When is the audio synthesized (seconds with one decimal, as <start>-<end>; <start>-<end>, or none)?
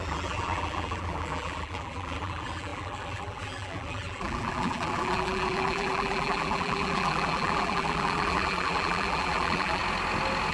0.0-9.8